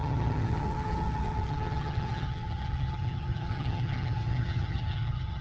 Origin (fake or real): fake